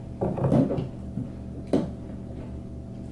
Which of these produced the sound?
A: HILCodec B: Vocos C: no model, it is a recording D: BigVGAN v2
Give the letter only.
C